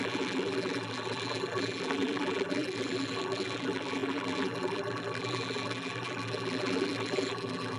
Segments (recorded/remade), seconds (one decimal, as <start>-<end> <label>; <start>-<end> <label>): 0.0-7.8 remade